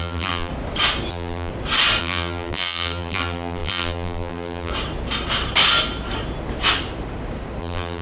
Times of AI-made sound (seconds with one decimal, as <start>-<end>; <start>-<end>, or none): 0.0-0.5; 1.1-1.5; 2.0-4.7; 7.6-8.0